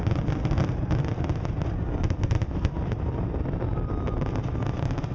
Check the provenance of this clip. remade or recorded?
remade